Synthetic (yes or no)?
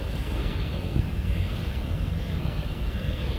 yes